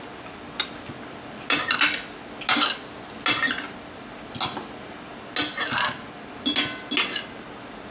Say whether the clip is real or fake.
real